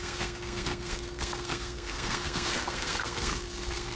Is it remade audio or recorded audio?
remade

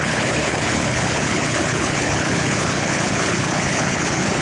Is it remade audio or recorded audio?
remade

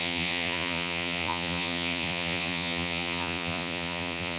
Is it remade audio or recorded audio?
remade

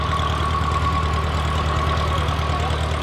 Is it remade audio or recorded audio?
recorded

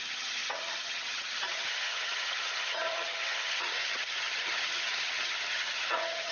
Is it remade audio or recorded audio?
remade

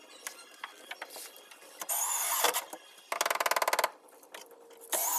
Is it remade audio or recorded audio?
recorded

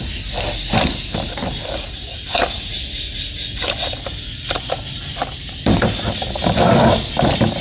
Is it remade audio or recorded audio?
recorded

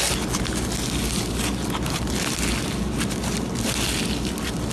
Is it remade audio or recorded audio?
recorded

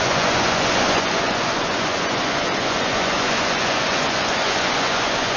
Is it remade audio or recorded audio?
remade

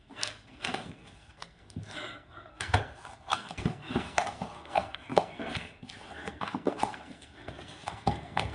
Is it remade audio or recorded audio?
remade